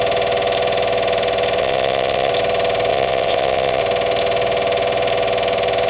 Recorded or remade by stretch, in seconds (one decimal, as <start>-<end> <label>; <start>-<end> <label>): 0.0-1.6 recorded; 1.6-2.3 remade; 2.3-2.9 recorded; 2.9-3.8 remade; 3.8-5.9 recorded

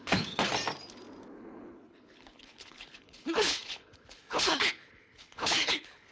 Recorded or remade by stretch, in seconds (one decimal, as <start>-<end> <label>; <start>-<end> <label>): 0.0-0.5 remade; 0.5-1.3 recorded; 1.3-6.1 remade

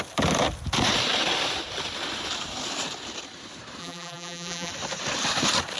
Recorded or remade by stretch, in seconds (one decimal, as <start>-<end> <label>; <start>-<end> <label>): 0.0-3.8 recorded; 3.8-4.7 remade; 4.7-5.8 recorded

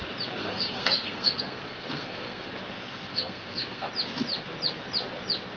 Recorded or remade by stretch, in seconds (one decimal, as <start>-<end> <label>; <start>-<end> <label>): 0.0-0.4 recorded; 0.4-2.5 remade; 2.5-3.1 recorded; 3.1-3.9 remade; 3.9-5.6 recorded

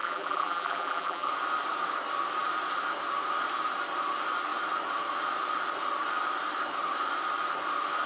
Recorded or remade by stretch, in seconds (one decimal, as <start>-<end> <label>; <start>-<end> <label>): 0.0-1.3 remade; 1.3-8.1 recorded

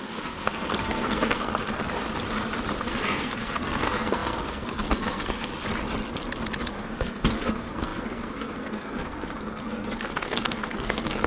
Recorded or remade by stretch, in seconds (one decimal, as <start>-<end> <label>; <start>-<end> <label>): 0.0-1.5 remade; 1.5-2.8 recorded; 2.8-5.5 remade; 5.5-6.7 recorded; 6.7-11.3 remade

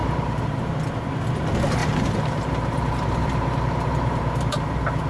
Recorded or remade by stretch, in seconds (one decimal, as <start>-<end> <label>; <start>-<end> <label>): 0.0-0.7 remade; 0.7-1.8 recorded; 1.8-5.1 remade

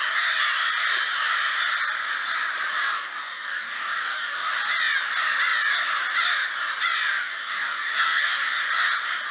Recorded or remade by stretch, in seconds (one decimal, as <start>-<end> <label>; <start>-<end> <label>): 0.0-2.7 recorded; 2.7-4.5 remade; 4.5-7.1 recorded; 7.1-8.6 remade; 8.6-9.3 recorded